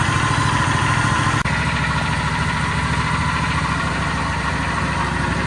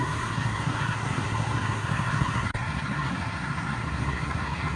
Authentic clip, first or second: first